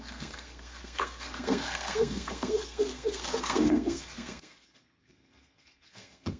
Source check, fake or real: fake